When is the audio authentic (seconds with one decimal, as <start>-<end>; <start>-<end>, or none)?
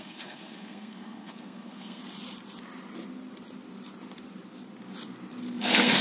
2.0-5.6